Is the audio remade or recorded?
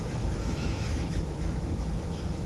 remade